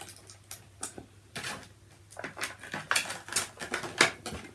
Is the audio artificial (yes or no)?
no